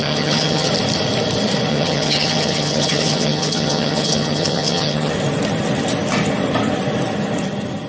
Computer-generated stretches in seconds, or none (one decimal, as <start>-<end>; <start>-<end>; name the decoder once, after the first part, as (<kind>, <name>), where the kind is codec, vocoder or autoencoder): 0.0-0.7 (vocoder, HiFi-GAN); 1.7-5.1